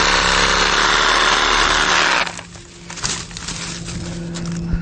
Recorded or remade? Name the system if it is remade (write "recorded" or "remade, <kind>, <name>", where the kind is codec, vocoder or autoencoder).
recorded